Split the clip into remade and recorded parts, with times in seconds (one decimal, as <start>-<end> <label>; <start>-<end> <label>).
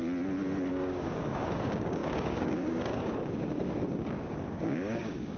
0.0-0.7 recorded; 0.7-5.4 remade